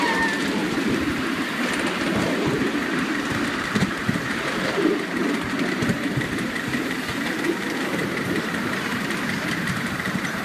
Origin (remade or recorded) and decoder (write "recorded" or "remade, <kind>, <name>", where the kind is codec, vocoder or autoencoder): remade, vocoder, BigVGAN v2